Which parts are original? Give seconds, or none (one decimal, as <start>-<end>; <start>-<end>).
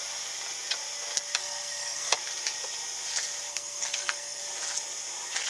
0.0-1.4; 2.1-3.5; 4.4-5.5